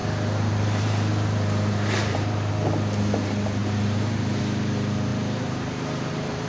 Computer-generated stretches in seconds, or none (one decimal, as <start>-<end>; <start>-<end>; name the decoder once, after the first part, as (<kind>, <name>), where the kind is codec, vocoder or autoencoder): 0.0-2.5 (vocoder, BigVGAN v2); 3.6-4.4; 5.1-6.5